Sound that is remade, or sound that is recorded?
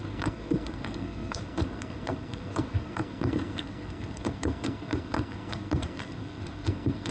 remade